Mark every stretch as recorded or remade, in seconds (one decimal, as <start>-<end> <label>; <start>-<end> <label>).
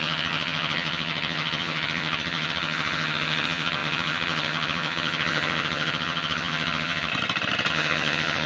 0.0-7.1 remade; 7.1-7.7 recorded; 7.7-8.5 remade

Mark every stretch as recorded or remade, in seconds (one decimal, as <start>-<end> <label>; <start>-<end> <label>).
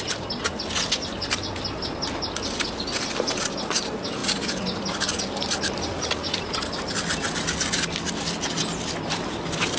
0.0-9.8 recorded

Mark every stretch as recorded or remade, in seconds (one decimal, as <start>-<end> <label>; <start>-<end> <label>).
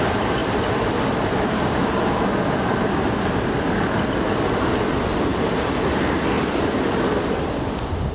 0.0-8.1 recorded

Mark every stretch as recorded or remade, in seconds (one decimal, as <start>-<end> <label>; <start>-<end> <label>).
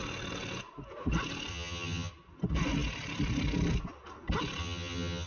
0.0-1.5 recorded; 1.5-2.1 remade; 2.1-4.6 recorded; 4.6-5.3 remade